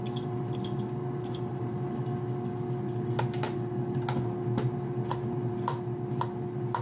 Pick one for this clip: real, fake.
real